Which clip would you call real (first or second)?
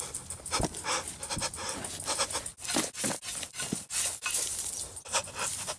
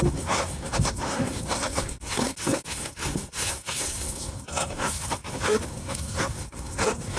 first